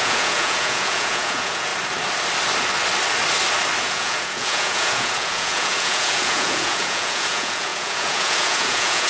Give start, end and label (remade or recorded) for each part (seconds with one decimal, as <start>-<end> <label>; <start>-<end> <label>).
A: 0.0-1.7 remade; 1.7-3.8 recorded; 3.8-9.1 remade